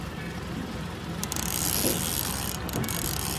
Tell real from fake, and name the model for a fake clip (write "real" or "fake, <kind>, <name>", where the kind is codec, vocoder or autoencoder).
real